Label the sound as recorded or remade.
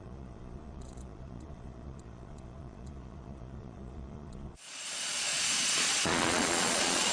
remade